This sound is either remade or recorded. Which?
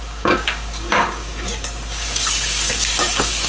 remade